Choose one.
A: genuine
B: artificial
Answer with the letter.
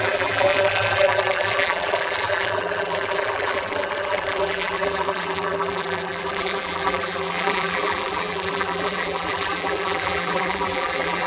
B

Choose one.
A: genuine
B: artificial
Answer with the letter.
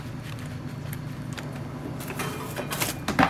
A